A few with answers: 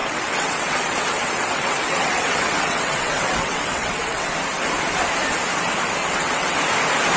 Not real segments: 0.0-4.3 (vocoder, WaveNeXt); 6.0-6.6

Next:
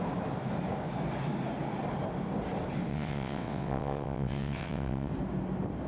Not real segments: 2.9-5.1 (vocoder, WaveNeXt)

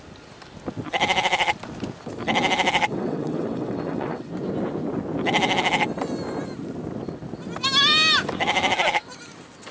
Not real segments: 2.9-4.3 (vocoder, WaveNeXt)

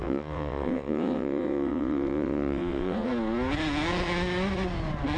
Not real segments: 0.0-3.1 (vocoder, WaveNeXt)

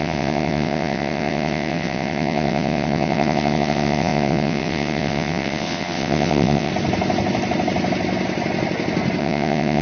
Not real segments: 0.0-6.7 (vocoder, WaveNeXt); 9.2-9.8

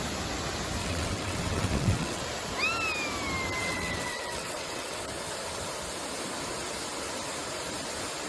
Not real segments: 0.8-2.2 (vocoder, WaveNeXt); 3.6-5.0